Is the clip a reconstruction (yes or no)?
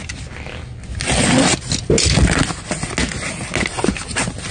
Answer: no